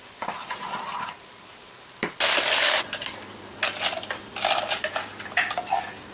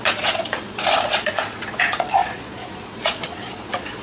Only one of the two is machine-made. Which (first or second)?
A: second